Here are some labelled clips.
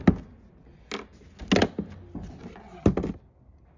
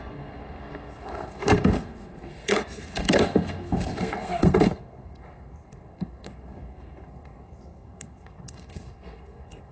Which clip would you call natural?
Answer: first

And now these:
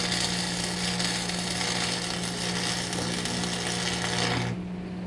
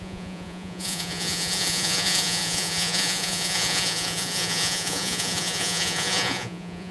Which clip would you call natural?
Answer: first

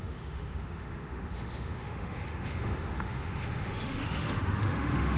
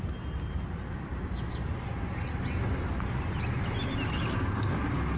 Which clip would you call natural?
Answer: second